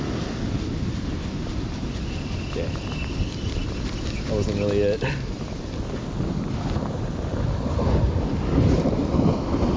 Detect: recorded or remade recorded